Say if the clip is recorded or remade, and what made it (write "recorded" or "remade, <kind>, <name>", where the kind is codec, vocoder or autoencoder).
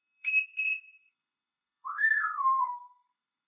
remade, codec, SNAC